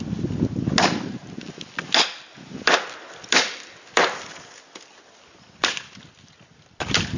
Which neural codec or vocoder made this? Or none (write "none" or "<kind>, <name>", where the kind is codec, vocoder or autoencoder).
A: none